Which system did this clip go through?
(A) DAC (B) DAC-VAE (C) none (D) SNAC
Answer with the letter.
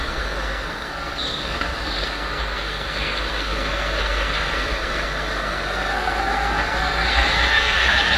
D